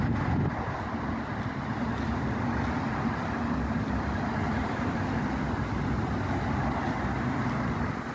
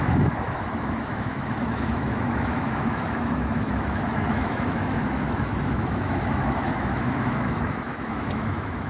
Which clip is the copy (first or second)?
second